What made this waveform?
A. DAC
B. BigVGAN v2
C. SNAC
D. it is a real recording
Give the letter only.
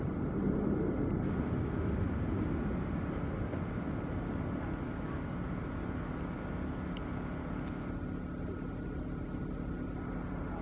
D